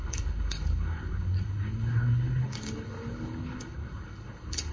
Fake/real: fake